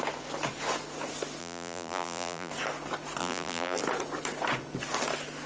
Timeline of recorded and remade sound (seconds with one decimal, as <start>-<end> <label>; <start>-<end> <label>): 0.0-1.4 recorded; 1.4-2.5 remade; 2.5-3.2 recorded; 3.2-3.8 remade; 3.8-5.5 recorded